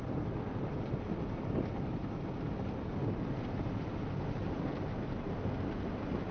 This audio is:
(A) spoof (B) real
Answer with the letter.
B